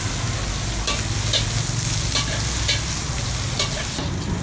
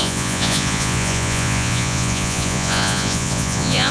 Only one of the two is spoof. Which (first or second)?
second